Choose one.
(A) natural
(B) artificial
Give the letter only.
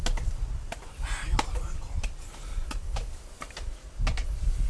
A